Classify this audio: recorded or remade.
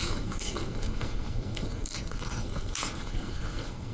remade